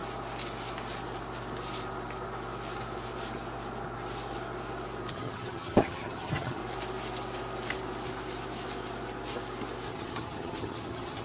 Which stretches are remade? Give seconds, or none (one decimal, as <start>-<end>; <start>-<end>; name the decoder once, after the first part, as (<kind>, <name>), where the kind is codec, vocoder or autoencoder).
5.1-6.6 (vocoder, HiFi-GAN); 9.9-11.2